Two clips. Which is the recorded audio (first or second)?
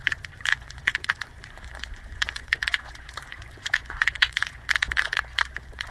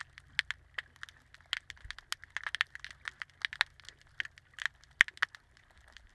second